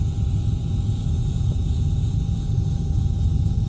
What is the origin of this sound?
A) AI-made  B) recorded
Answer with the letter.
A